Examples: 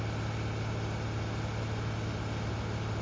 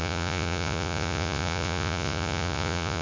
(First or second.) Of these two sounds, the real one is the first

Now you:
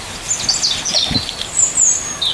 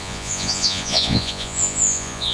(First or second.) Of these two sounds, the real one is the first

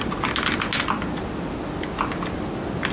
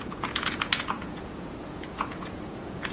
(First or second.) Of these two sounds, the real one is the first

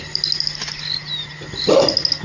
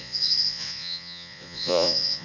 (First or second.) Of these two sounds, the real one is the first